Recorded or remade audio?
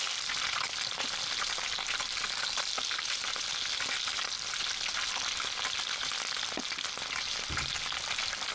recorded